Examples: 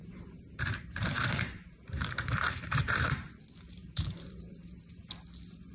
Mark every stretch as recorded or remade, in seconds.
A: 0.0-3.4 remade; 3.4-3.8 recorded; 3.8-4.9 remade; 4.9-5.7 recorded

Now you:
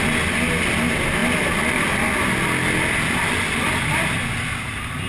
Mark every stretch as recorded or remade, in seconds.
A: 0.0-1.2 recorded; 1.2-1.9 remade; 1.9-5.1 recorded

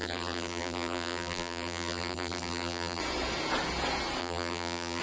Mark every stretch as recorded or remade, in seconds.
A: 0.0-3.0 remade; 3.0-4.2 recorded; 4.2-5.0 remade

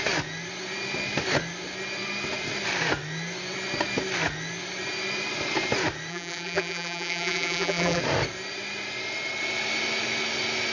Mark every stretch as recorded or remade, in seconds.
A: 0.0-6.1 recorded; 6.1-8.0 remade; 8.0-10.7 recorded